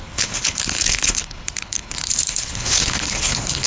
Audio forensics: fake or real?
fake